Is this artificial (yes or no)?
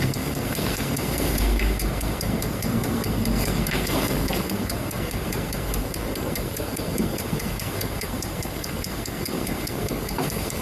yes